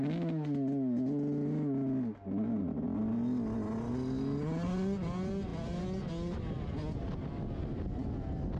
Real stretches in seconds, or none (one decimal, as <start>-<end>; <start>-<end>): 0.0-8.6